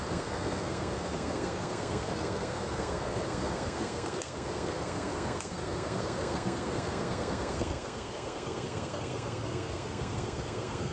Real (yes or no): no